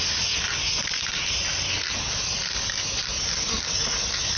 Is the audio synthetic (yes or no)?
no